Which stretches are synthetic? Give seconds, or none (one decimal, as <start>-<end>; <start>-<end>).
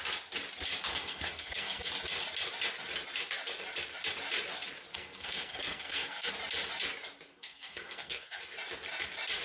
0.9-1.9; 4.9-6.3; 7.3-8.4